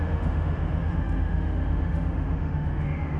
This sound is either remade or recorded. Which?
remade